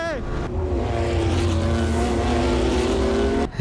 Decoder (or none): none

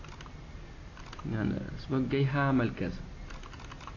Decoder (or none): none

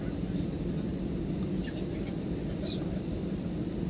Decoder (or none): vocoder, BigVGAN v2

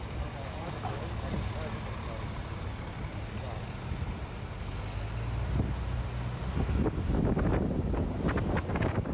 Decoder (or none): none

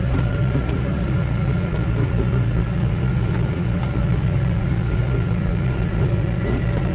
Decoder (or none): vocoder, Vocos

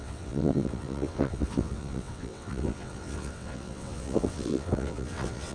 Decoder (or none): vocoder, WaveNeXt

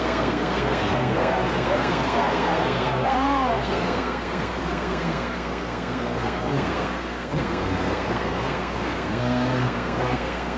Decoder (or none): codec, SNAC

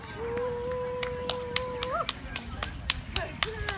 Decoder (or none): none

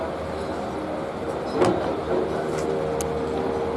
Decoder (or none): none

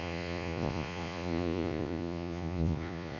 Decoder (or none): vocoder, Vocos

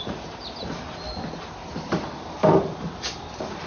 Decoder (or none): none